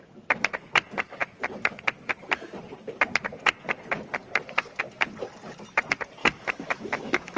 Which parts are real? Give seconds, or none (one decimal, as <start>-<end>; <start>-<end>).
0.0-6.2